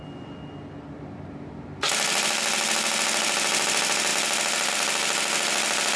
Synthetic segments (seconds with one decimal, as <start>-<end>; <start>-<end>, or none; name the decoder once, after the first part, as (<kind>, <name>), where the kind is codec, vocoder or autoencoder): none